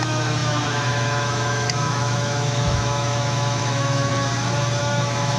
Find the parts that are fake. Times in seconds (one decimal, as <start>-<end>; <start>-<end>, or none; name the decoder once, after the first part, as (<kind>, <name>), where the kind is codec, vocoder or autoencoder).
0.0-4.1 (autoencoder, DAC-VAE); 4.8-5.4